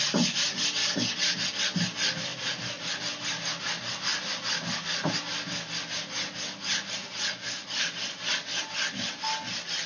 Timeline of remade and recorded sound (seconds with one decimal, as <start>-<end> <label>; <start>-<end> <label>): 0.0-9.9 recorded